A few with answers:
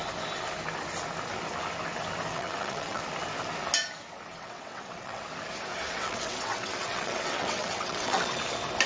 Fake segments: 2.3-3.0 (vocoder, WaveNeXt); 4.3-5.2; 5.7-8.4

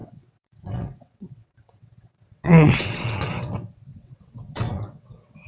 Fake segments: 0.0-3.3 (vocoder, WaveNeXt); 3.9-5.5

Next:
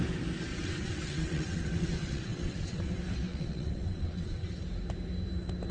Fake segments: 0.5-2.9 (vocoder, WaveNeXt); 3.3-4.5

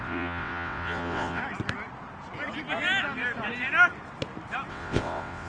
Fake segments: 0.0-1.4 (vocoder, WaveNeXt); 4.7-5.5

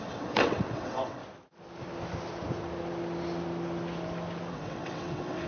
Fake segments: 0.0-1.2 (vocoder, WaveNeXt); 4.5-5.5

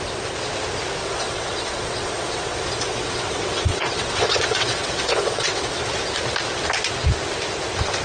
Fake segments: 1.0-5.8 (vocoder, WaveNeXt)

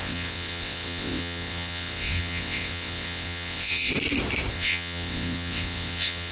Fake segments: 0.0-3.9 (vocoder, WaveNeXt); 4.5-6.3

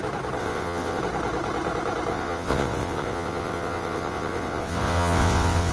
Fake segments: 0.4-1.0 (vocoder, WaveNeXt); 2.1-5.7